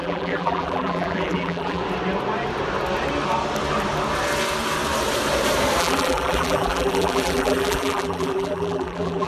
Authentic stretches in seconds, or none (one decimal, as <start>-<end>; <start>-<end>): 1.8-5.8